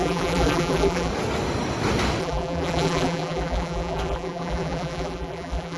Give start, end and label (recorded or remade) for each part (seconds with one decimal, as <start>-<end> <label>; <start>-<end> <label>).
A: 0.0-1.1 remade; 1.1-2.2 recorded; 2.2-5.8 remade